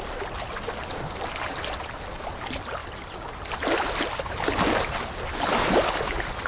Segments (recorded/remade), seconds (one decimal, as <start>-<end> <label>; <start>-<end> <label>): 0.0-6.5 recorded